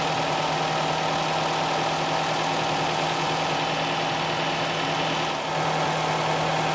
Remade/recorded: recorded